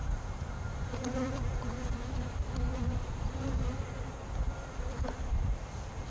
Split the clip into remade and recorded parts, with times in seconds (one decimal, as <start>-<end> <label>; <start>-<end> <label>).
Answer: 0.0-3.7 remade; 3.7-4.9 recorded; 4.9-5.5 remade; 5.5-6.1 recorded